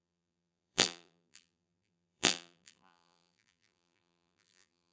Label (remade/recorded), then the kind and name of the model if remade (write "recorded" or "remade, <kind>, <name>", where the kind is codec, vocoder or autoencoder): remade, vocoder, BigVGAN v2